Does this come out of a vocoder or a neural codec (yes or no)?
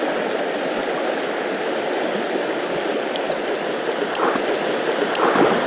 no